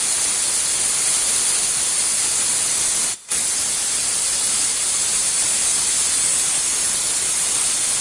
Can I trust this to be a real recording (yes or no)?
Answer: yes